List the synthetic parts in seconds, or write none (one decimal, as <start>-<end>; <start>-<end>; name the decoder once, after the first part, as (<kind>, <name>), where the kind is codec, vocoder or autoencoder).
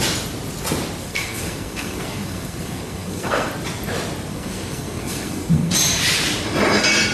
1.0-3.5 (codec, SNAC); 4.3-5.7